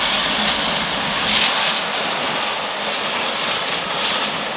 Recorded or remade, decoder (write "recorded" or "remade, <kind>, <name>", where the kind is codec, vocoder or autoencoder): recorded